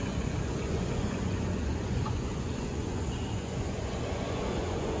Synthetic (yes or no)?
yes